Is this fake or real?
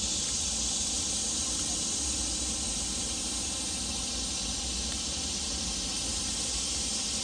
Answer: real